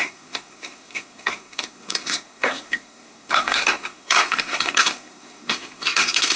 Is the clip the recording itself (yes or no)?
no